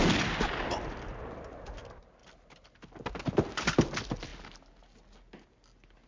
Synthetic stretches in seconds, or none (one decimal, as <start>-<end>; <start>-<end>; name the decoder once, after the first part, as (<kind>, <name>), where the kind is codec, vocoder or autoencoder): none